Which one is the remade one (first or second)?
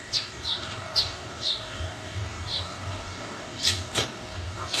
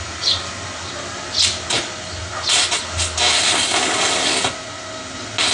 first